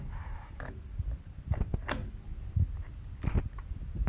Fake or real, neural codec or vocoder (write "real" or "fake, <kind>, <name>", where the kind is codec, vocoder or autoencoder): real